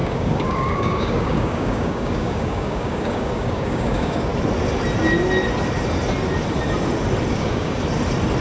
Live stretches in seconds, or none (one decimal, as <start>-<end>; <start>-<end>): 4.3-7.3; 7.8-8.4